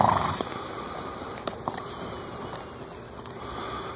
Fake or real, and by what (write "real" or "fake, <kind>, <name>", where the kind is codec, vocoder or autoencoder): fake, vocoder, BigVGAN v2